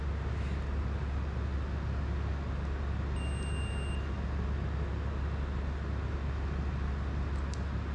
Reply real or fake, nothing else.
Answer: real